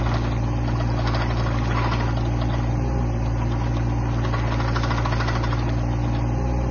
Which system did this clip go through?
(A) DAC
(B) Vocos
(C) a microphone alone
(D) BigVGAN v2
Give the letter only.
C